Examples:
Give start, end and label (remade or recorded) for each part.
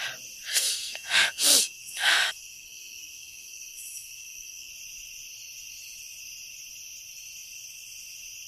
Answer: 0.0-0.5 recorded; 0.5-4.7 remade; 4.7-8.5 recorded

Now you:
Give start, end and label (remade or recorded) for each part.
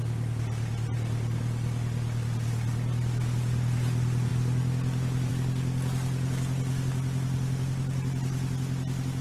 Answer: 0.0-9.2 recorded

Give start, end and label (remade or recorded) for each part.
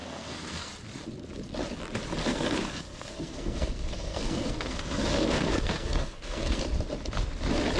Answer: 0.0-0.7 remade; 0.7-2.2 recorded; 2.2-6.6 remade; 6.6-7.8 recorded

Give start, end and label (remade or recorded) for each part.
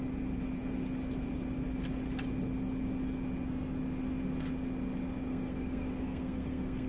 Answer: 0.0-5.3 recorded; 5.3-6.9 remade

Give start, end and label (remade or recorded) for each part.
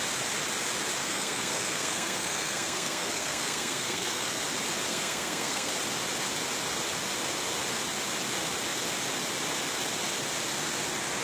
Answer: 0.0-1.0 recorded; 1.0-4.4 remade; 4.4-4.9 recorded; 4.9-5.7 remade; 5.7-11.2 recorded